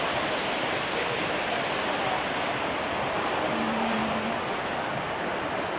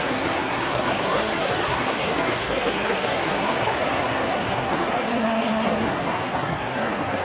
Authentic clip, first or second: first